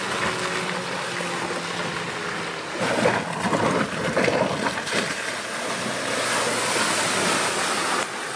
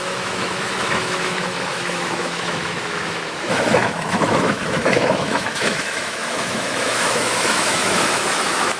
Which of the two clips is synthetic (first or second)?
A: second